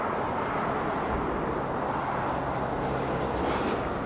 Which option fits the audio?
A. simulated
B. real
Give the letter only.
B